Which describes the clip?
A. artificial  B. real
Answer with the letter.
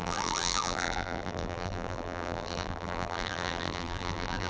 A